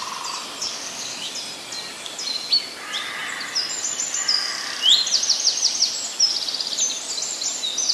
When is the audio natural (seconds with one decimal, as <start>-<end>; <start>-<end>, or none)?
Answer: 0.0-0.6; 1.3-7.9